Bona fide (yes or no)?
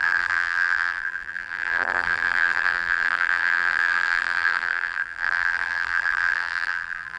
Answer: no